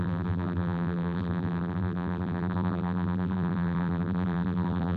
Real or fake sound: fake